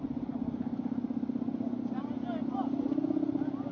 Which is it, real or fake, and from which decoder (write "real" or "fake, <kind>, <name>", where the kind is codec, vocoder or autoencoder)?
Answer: real